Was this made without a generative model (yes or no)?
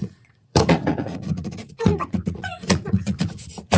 no